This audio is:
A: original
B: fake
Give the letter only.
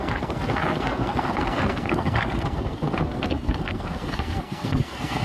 B